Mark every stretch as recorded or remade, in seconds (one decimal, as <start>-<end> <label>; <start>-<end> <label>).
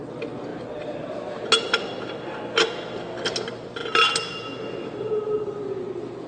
0.0-6.3 recorded